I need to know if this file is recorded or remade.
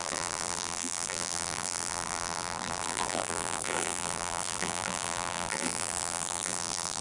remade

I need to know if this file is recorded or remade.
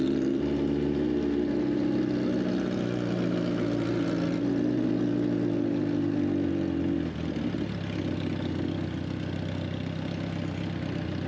recorded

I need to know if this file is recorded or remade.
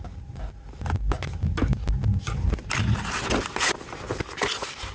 recorded